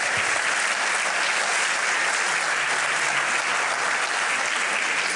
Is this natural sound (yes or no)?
yes